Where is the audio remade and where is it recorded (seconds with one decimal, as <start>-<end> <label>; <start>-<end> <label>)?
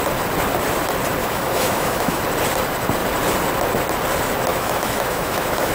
0.0-1.2 recorded; 1.2-2.2 remade; 2.2-4.5 recorded; 4.5-5.7 remade